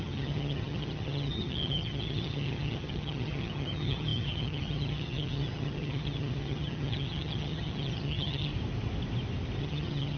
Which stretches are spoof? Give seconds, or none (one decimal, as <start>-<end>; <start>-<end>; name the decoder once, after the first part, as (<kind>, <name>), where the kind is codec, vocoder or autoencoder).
0.0-8.5 (vocoder, HiFi-GAN); 9.6-10.2